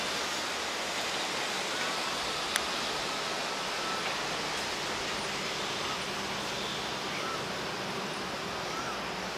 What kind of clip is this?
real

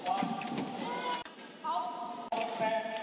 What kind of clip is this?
real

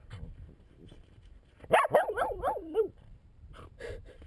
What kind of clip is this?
fake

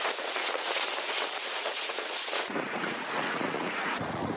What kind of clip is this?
fake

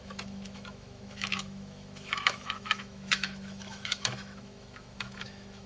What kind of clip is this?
fake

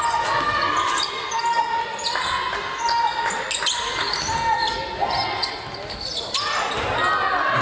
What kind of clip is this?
real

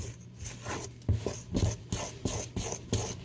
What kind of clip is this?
real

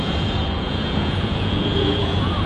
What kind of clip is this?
fake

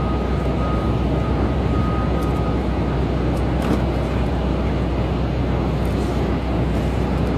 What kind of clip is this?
real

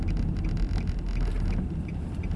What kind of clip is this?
real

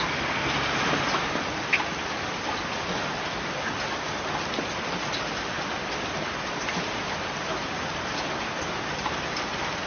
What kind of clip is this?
real